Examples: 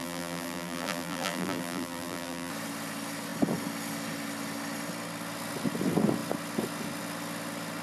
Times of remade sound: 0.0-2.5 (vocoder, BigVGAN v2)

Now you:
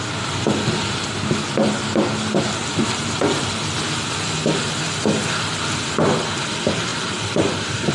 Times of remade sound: 2.6-3.6 (vocoder, BigVGAN v2); 6.9-7.9

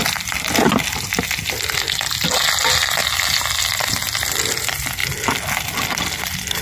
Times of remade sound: none

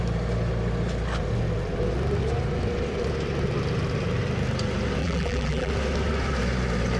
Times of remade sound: 5.0-5.7 (vocoder, BigVGAN v2)

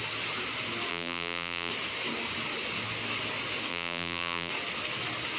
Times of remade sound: 0.9-1.7 (vocoder, BigVGAN v2); 3.7-4.5